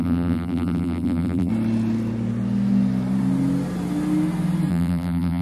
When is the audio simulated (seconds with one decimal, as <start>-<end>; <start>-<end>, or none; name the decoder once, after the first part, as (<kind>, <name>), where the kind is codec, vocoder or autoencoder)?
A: 0.0-1.5 (vocoder, BigVGAN v2); 4.7-5.4